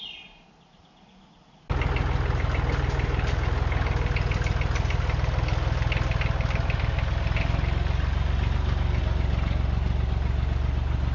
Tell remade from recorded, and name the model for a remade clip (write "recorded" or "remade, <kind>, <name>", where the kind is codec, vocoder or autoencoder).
recorded